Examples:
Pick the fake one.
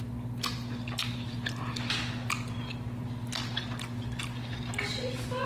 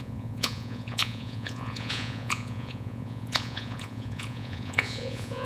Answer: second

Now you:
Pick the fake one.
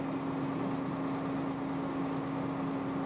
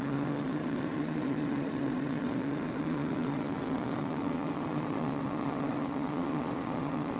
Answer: second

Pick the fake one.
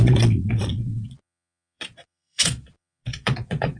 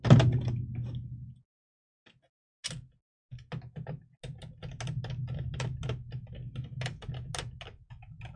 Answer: first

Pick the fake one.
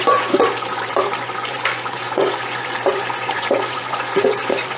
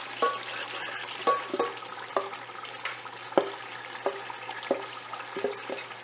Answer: first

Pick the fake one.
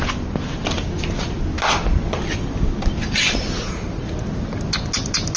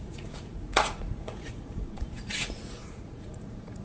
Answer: second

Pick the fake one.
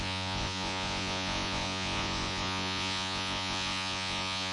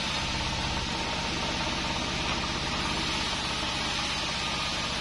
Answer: first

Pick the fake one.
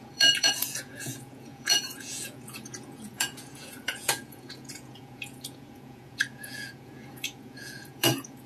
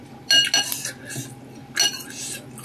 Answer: first